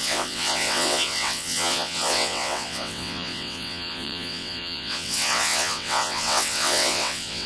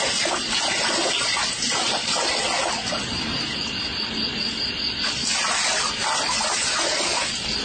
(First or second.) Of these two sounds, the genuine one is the second